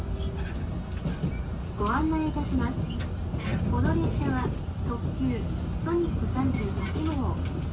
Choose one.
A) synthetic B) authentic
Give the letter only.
B